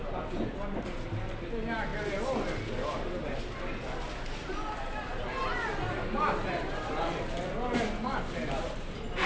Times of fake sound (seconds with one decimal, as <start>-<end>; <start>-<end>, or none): none